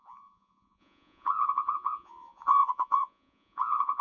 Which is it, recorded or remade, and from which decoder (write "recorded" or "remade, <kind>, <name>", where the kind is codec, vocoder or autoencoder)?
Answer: remade, vocoder, Vocos